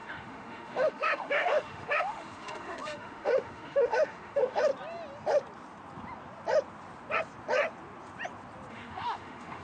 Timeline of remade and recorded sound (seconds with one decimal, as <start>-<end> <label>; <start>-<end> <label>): 0.0-4.7 remade; 4.7-8.7 recorded; 8.7-9.6 remade